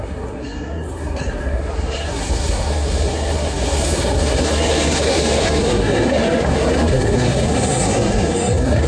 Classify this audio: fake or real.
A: fake